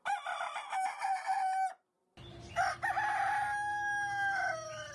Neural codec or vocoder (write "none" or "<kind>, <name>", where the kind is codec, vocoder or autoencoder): none